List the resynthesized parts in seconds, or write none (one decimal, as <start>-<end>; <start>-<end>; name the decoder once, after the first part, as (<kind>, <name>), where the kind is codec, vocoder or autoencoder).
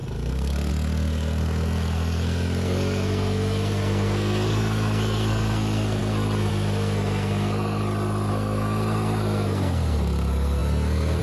0.0-7.8 (codec, SNAC); 8.3-11.2